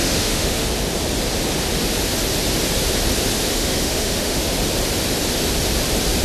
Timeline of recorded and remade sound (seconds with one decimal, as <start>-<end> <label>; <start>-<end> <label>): 0.0-0.7 remade; 0.7-3.5 recorded; 3.5-4.4 remade; 4.4-6.2 recorded